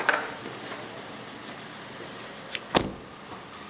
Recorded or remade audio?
recorded